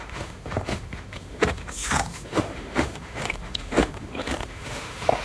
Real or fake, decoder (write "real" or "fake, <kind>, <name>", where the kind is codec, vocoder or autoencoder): fake, autoencoder, DAC-VAE